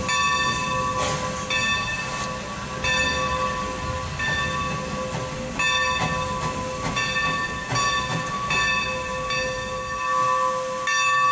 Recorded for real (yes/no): yes